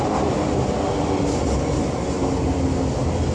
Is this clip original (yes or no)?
yes